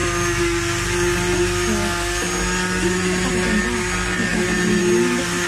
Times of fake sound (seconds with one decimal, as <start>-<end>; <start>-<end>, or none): none